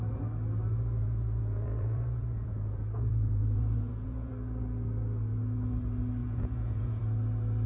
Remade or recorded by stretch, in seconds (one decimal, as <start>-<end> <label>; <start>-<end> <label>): 0.0-1.0 recorded; 1.0-4.3 remade; 4.3-6.2 recorded; 6.2-7.0 remade; 7.0-7.7 recorded